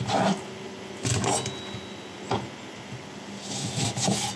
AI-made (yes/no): no